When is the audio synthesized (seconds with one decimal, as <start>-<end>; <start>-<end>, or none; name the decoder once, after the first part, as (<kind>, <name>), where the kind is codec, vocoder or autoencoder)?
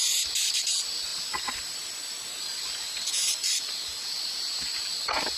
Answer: none